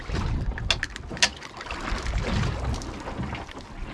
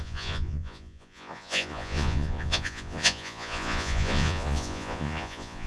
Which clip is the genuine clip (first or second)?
first